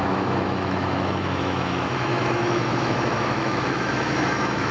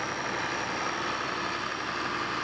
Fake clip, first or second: first